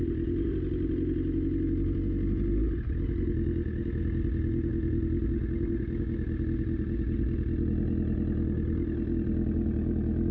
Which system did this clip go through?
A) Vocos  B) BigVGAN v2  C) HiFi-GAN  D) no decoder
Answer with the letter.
D